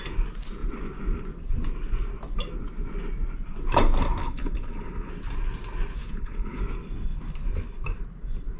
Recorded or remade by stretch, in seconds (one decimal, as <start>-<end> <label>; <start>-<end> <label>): 0.0-4.2 recorded; 4.2-5.1 remade; 5.1-6.0 recorded; 6.0-6.6 remade; 6.6-8.6 recorded